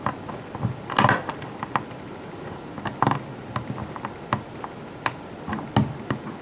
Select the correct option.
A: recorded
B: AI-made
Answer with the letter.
A